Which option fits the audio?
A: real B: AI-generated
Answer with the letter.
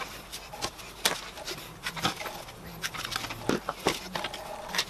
A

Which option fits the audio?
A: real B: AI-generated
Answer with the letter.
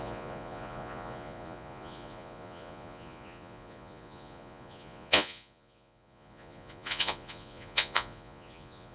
B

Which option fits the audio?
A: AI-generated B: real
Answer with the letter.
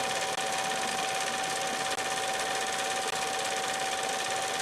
B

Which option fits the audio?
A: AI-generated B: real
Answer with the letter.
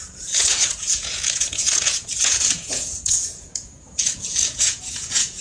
A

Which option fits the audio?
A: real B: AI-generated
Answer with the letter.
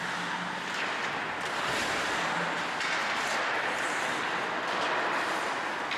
A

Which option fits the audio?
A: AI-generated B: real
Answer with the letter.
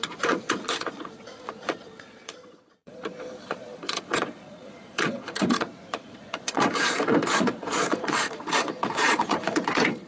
A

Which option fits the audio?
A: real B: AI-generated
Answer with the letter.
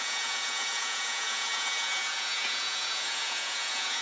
B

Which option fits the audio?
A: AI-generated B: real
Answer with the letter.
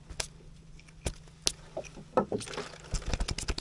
B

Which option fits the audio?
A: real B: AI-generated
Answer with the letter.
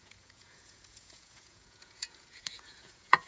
B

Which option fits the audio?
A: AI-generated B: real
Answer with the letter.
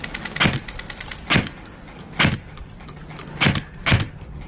B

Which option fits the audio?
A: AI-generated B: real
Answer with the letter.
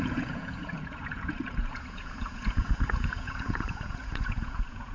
A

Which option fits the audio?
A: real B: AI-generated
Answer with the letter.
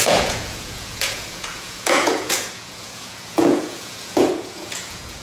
B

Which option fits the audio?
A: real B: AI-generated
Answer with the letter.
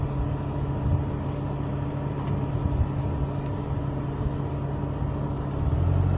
A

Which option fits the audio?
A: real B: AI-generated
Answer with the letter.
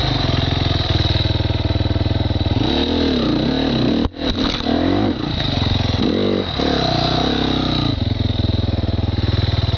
A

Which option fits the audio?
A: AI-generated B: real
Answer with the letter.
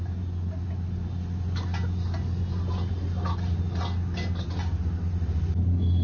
B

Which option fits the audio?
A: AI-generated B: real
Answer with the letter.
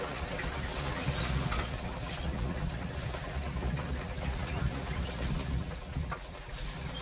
A